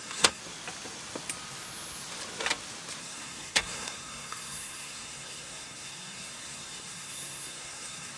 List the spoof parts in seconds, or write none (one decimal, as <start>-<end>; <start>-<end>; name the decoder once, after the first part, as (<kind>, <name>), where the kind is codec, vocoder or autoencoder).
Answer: 0.0-0.4 (codec, SNAC); 3.0-8.2